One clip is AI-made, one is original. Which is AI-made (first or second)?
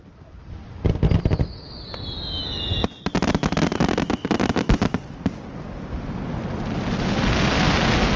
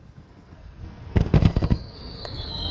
second